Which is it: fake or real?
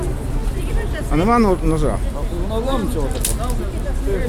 real